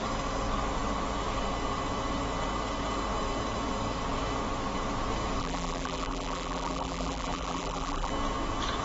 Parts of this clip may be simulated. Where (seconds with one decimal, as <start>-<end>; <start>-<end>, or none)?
5.4-8.1